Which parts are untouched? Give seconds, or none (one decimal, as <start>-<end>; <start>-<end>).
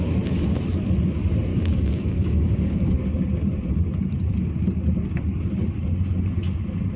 0.0-1.5; 2.9-7.0